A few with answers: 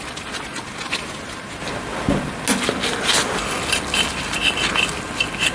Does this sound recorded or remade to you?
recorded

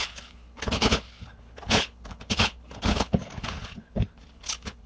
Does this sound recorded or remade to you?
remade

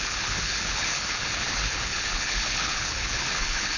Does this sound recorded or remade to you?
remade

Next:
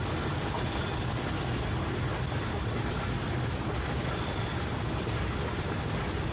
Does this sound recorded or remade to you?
recorded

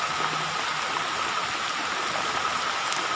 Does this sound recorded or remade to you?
recorded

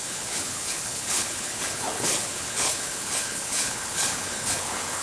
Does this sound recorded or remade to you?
remade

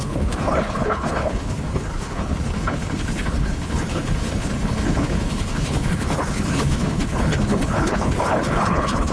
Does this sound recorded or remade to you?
remade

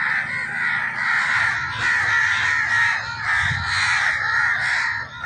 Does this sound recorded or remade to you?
recorded